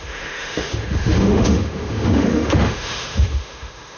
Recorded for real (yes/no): no